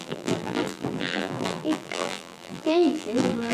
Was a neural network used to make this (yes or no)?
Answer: yes